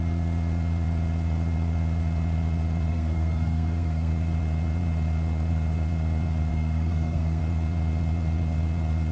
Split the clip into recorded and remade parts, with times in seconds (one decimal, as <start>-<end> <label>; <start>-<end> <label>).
0.0-2.9 recorded; 2.9-4.1 remade; 4.1-6.5 recorded; 6.5-7.4 remade; 7.4-9.1 recorded

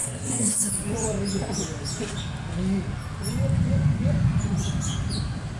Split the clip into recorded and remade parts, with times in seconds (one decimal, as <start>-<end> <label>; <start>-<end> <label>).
0.0-0.7 remade; 0.7-5.6 recorded

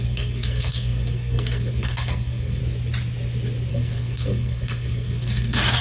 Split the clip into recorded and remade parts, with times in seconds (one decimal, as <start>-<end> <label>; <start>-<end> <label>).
0.0-2.6 remade; 2.6-3.7 recorded; 3.7-5.8 remade

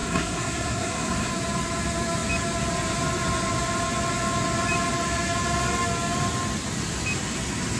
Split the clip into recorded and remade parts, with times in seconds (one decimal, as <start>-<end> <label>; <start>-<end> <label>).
0.0-1.3 remade; 1.3-7.8 recorded

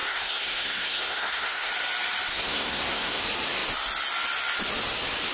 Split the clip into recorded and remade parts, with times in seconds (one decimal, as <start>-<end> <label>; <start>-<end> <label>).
0.0-1.7 remade; 1.7-2.3 recorded; 2.3-3.2 remade; 3.2-5.3 recorded

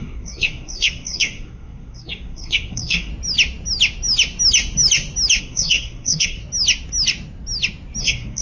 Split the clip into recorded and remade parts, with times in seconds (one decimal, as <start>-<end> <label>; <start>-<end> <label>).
0.0-3.1 remade; 3.1-5.4 recorded; 5.4-6.4 remade; 6.4-8.0 recorded; 8.0-8.4 remade